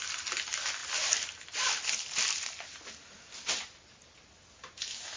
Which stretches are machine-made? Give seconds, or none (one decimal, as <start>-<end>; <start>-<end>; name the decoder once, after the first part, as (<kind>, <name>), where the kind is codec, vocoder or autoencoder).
0.8-3.4 (vocoder, BigVGAN v2)